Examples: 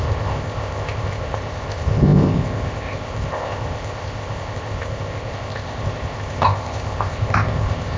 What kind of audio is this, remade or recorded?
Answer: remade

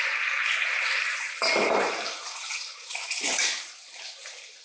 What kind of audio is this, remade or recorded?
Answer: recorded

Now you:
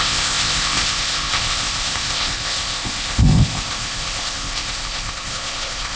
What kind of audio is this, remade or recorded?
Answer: remade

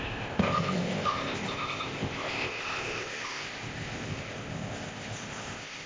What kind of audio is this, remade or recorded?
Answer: remade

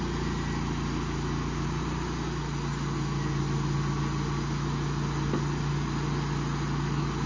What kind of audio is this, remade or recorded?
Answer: recorded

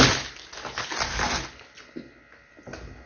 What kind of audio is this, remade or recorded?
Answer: recorded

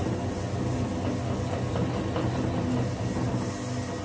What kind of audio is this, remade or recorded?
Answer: recorded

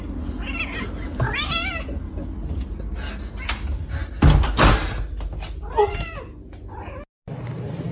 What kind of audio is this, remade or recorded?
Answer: recorded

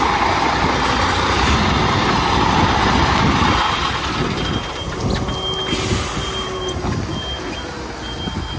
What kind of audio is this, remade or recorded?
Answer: recorded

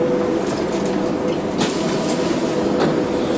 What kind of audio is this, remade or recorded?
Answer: recorded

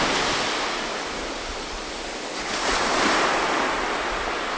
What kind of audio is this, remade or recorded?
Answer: recorded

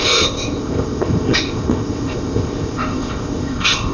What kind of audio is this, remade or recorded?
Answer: remade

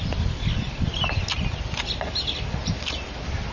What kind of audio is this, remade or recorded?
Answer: recorded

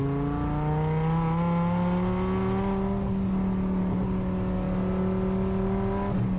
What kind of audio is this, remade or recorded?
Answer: recorded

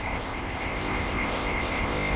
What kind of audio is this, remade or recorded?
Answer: remade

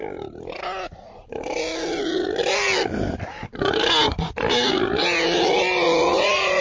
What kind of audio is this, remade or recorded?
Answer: recorded